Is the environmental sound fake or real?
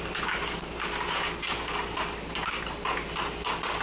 real